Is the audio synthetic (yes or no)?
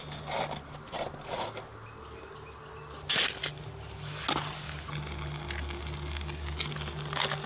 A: no